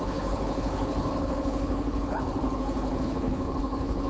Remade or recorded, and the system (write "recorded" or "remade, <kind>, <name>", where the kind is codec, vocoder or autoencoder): remade, codec, HILCodec